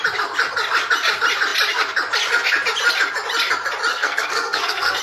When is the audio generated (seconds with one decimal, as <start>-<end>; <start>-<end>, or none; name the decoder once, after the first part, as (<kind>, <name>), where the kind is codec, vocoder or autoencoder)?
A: 3.9-5.0 (codec, SNAC)